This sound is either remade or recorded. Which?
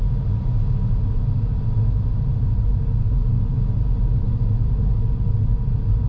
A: recorded